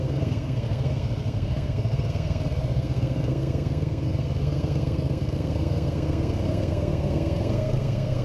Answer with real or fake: fake